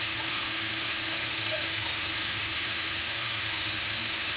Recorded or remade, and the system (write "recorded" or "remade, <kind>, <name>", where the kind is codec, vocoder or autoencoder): remade, autoencoder, DAC-VAE